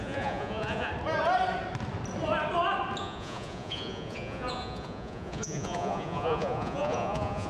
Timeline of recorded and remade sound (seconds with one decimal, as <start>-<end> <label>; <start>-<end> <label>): 0.0-0.9 remade; 0.9-3.0 recorded; 3.0-7.5 remade